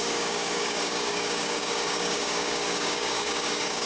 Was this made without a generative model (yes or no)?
no